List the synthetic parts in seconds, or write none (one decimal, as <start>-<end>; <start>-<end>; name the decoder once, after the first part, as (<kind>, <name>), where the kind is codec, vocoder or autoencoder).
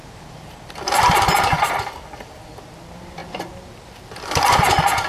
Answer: 0.0-5.1 (vocoder, BigVGAN v2)